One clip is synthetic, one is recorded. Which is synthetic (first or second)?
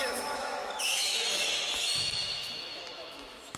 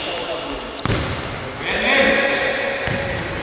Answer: first